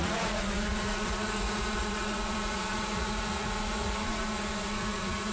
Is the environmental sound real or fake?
fake